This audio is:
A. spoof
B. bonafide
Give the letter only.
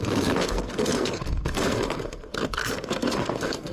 A